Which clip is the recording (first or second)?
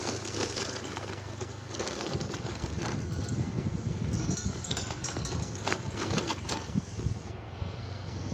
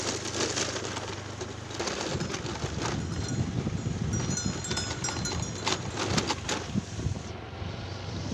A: second